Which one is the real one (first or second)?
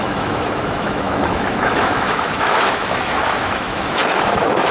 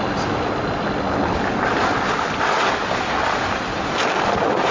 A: second